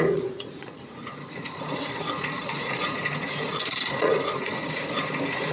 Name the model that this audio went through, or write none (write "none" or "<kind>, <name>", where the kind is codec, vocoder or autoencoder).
vocoder, Vocos